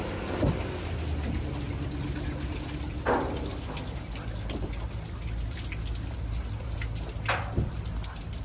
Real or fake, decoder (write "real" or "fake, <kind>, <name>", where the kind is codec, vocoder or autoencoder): real